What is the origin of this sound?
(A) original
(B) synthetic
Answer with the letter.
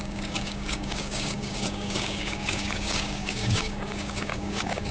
B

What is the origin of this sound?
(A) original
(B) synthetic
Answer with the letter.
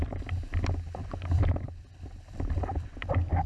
A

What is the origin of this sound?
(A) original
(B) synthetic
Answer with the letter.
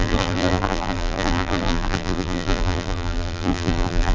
B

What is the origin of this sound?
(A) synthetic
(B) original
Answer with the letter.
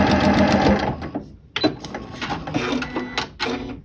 B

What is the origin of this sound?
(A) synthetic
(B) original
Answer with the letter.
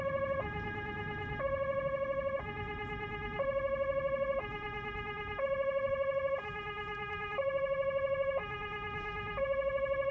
B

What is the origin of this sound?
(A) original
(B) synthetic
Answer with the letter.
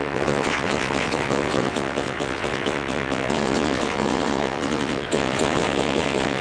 B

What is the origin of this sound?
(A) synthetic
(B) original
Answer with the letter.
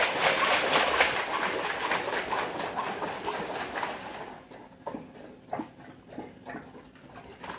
B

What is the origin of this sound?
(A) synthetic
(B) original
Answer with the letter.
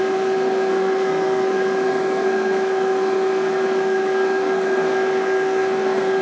A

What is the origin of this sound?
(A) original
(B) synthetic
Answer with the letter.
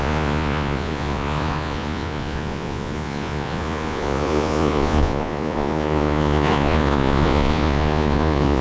B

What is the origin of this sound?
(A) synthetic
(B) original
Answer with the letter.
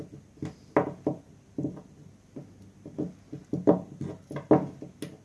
B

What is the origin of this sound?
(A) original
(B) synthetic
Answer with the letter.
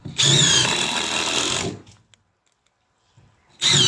A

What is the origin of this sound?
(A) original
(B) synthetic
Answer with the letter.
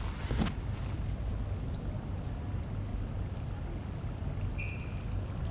A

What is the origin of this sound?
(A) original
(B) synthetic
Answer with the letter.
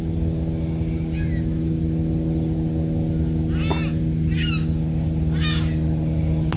A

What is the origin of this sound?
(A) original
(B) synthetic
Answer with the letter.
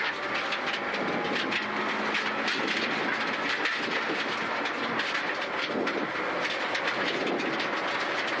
A